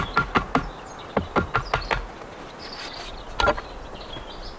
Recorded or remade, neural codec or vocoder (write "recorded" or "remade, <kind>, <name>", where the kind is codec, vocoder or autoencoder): recorded